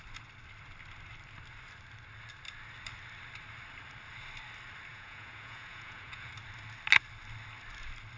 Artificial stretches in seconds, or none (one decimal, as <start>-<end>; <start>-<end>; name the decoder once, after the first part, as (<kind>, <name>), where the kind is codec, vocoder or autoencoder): 4.9-6.3 (vocoder, Vocos)